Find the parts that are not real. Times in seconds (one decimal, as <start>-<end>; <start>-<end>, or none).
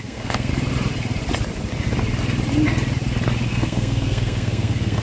0.0-0.5; 3.5-5.0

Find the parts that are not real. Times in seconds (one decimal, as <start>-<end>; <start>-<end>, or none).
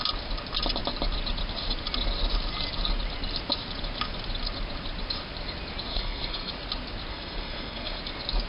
5.9-6.5; 7.1-8.0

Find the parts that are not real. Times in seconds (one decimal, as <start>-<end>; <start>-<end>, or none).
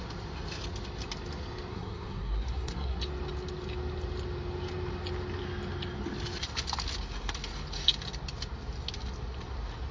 1.7-3.0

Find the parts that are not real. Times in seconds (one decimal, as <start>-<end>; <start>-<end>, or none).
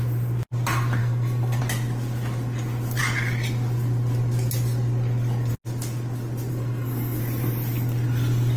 1.0-1.6; 6.5-7.2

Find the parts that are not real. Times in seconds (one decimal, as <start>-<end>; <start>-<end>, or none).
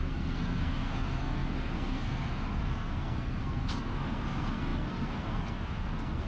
0.0-6.3